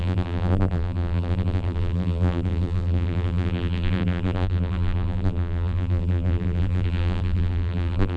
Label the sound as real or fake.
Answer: fake